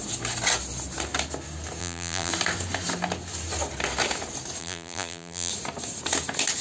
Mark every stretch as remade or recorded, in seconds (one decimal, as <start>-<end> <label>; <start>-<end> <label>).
0.0-1.8 recorded; 1.8-2.3 remade; 2.3-4.6 recorded; 4.6-5.5 remade; 5.5-6.6 recorded